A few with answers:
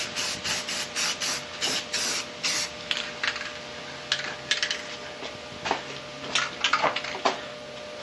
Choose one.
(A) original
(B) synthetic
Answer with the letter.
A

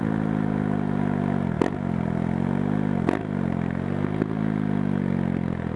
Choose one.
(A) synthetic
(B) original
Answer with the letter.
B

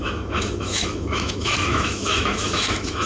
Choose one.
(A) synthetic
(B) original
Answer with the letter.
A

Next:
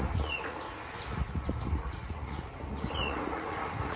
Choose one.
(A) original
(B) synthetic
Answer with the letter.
B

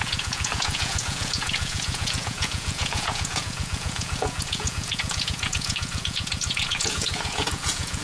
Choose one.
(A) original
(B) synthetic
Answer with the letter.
B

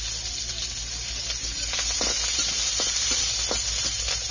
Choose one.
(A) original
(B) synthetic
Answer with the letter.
A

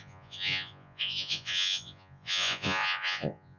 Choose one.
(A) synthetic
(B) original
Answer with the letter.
A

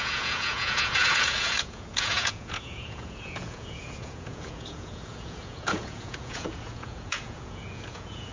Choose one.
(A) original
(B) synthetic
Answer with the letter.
B